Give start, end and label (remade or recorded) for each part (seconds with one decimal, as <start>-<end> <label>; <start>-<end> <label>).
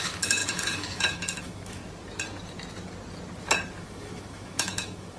0.0-1.8 remade; 1.8-3.8 recorded; 3.8-5.2 remade